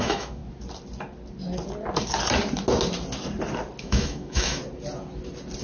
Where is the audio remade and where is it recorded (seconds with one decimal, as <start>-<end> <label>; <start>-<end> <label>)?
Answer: 0.0-0.4 remade; 0.4-3.8 recorded; 3.8-4.6 remade; 4.6-5.6 recorded